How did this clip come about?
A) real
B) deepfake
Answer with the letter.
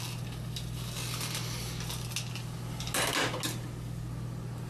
A